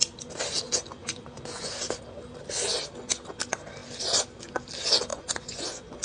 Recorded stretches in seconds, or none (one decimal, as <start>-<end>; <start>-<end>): 0.0-1.0; 1.7-5.1